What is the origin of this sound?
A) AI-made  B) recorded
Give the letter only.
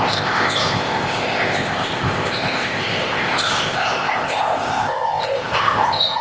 A